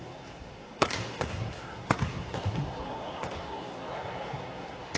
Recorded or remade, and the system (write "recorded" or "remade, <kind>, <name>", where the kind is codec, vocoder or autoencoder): remade, codec, SNAC